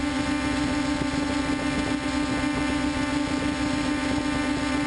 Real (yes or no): yes